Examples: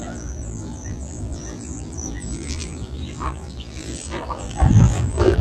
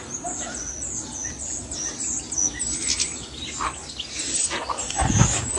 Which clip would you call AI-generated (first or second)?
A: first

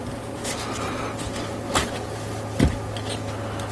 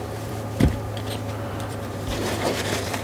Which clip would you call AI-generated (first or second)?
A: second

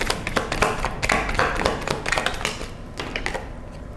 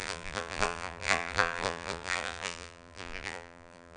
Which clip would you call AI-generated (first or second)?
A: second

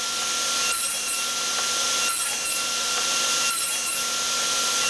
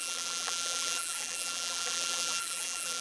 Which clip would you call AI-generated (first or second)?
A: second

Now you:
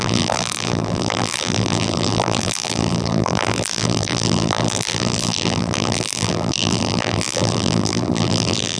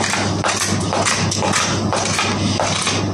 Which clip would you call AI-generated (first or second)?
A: first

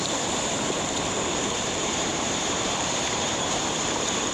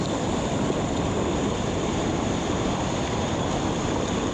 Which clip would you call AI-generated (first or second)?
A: first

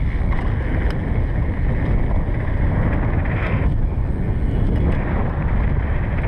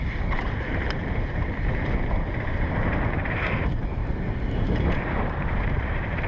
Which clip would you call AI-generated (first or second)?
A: second